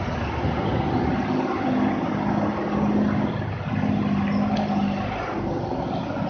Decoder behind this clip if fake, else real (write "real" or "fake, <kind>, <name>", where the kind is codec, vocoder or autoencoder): real